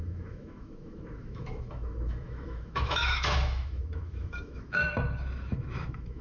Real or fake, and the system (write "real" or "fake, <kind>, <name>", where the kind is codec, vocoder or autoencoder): fake, autoencoder, DAC-VAE